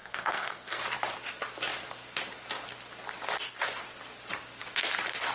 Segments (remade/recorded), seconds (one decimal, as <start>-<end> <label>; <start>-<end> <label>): 0.0-0.8 remade; 0.8-5.3 recorded